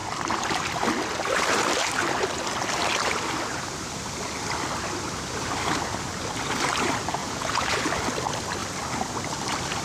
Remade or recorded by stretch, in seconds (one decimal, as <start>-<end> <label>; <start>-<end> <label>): 0.0-7.2 recorded; 7.2-7.9 remade; 7.9-9.8 recorded